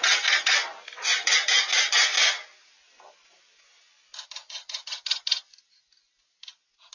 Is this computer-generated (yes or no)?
no